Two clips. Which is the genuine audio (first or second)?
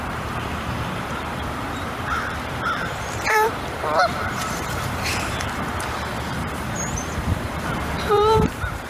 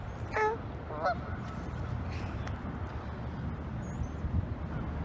second